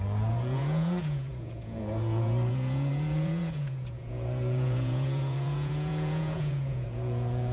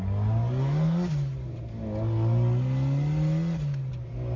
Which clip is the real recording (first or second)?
second